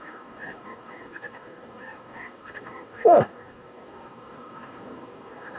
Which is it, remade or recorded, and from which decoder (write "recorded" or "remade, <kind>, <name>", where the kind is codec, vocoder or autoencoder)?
remade, codec, DAC